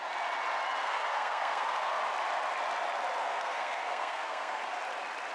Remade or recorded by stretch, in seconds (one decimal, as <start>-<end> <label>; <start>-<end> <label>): 0.0-0.8 recorded; 0.8-2.0 remade; 2.0-3.2 recorded; 3.2-4.6 remade; 4.6-5.3 recorded